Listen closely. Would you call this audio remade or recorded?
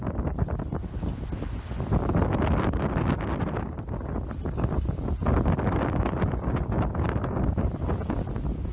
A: recorded